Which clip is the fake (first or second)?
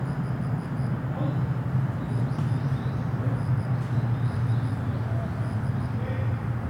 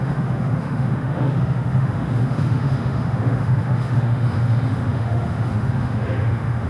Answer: second